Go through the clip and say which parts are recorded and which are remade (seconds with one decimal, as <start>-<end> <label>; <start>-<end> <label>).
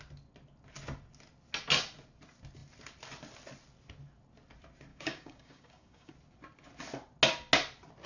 0.0-4.9 recorded; 4.9-6.1 remade; 6.1-8.1 recorded